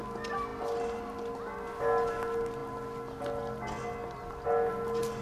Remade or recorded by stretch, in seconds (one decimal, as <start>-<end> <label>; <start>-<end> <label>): 0.0-5.2 recorded

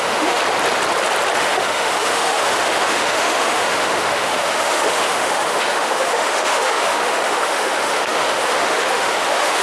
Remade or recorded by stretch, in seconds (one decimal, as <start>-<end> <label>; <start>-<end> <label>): 0.0-0.4 remade; 0.4-1.4 recorded; 1.4-9.6 remade

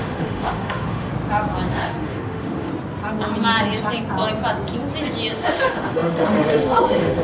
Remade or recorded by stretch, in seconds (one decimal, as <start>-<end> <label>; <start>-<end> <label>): 0.0-1.1 remade; 1.1-1.7 recorded; 1.7-2.7 remade; 2.7-5.3 recorded; 5.3-7.2 remade